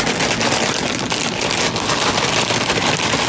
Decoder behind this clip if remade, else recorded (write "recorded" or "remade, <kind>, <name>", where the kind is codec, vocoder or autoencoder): recorded